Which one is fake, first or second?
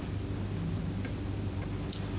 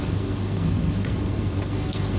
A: second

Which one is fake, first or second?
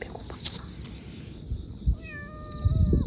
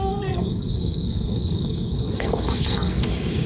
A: second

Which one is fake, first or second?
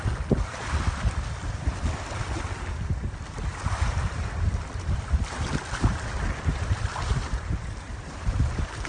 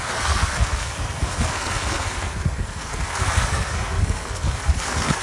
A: second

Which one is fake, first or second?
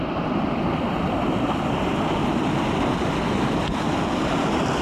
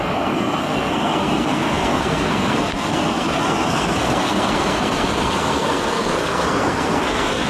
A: second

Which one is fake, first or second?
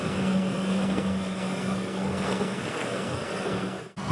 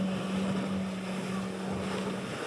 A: first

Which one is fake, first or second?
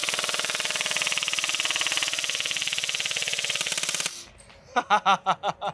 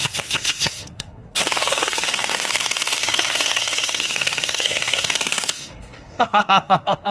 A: second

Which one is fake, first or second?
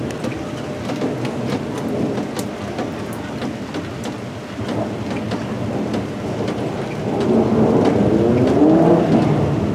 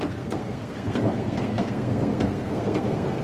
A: second